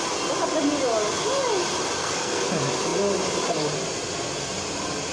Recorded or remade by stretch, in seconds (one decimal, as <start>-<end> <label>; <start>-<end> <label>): 0.0-2.0 recorded; 2.0-2.5 remade; 2.5-5.1 recorded